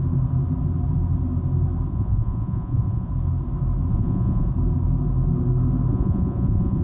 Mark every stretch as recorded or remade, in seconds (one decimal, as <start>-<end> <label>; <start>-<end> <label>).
0.0-1.9 recorded; 1.9-3.1 remade; 3.1-3.9 recorded; 3.9-4.5 remade; 4.5-5.9 recorded; 5.9-6.8 remade